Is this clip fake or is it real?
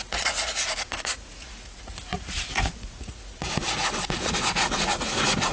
fake